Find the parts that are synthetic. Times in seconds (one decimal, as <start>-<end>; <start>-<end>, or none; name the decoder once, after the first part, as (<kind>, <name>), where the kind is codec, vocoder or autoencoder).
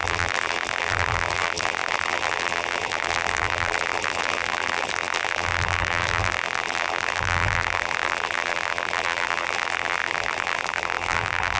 0.0-11.6 (vocoder, BigVGAN v2)